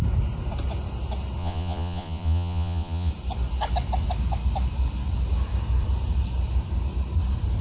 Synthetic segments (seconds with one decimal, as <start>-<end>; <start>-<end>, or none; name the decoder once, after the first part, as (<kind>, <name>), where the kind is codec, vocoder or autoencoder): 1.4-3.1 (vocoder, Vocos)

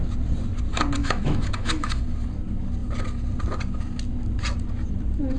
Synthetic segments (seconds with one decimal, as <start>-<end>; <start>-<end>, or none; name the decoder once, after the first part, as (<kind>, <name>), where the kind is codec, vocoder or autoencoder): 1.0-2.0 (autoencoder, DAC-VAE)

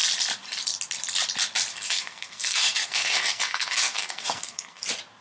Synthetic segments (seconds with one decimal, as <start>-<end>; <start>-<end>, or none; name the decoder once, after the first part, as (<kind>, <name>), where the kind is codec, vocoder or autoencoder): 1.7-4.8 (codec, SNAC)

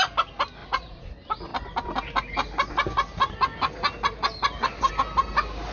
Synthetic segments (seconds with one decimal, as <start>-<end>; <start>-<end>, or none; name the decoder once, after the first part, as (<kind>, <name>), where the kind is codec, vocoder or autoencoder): 0.6-1.1 (vocoder, Vocos)

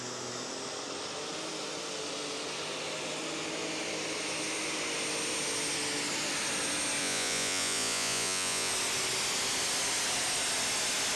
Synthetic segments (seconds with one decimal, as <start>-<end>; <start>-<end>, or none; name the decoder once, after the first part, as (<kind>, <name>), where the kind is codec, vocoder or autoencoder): 7.0-8.7 (vocoder, Vocos)